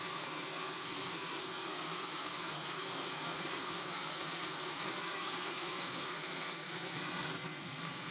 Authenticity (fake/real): fake